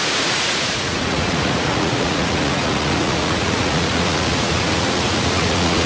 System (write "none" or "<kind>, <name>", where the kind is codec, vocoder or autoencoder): vocoder, Vocos